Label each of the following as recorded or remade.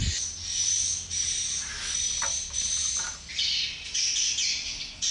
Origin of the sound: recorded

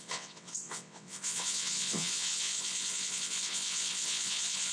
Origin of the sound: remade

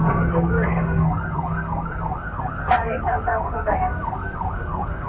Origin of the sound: remade